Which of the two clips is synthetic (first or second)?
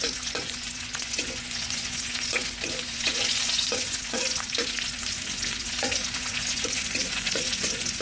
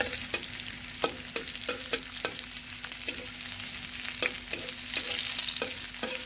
first